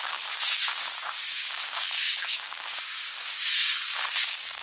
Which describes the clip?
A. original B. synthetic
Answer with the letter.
B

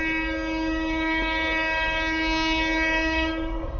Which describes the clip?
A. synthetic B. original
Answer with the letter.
A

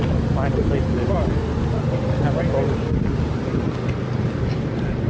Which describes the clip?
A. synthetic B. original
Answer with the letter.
B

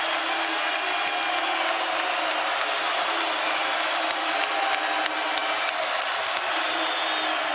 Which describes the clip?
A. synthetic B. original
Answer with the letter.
B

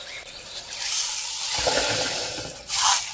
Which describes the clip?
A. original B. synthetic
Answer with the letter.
A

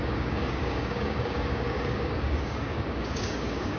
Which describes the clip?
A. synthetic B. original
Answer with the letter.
A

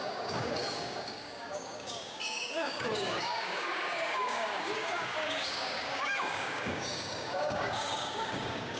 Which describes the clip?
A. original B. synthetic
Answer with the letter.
B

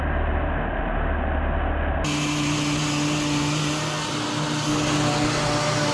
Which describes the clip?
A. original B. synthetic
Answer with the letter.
A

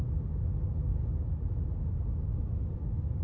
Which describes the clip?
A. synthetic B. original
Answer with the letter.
B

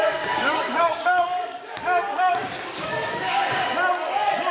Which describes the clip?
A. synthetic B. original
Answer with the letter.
A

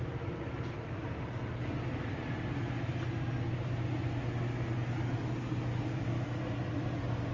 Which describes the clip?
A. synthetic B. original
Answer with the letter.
B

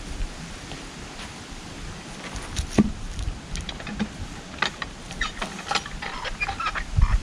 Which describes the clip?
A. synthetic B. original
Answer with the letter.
B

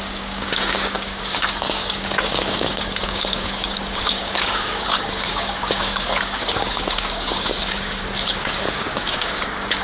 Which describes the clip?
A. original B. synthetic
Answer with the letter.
B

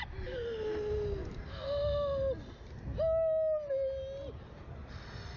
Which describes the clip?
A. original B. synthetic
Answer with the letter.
A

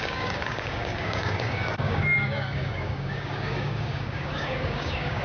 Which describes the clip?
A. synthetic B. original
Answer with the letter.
A